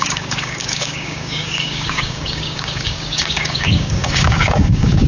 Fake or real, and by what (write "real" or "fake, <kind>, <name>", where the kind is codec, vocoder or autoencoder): fake, codec, DAC